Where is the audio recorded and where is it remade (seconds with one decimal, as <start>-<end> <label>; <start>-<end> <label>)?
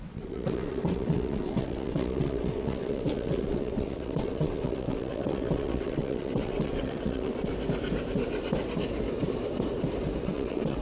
0.0-7.5 remade; 7.5-10.2 recorded; 10.2-10.8 remade